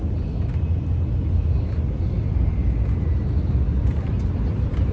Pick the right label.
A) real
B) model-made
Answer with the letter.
A